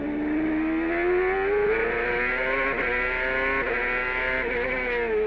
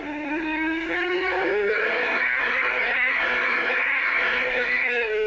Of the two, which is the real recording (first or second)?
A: first